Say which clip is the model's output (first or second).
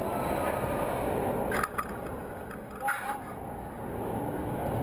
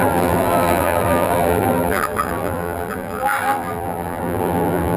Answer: second